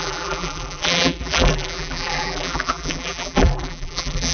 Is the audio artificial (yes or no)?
yes